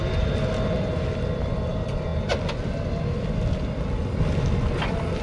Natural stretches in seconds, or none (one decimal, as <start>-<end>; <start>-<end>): 0.0-5.2